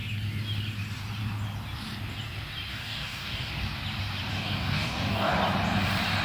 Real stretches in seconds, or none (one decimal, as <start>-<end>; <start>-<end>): 0.0-2.7; 3.5-4.3; 5.3-6.2